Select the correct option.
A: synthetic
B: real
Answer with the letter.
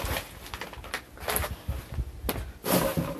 B